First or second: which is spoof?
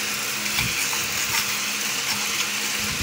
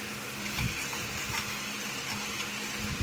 second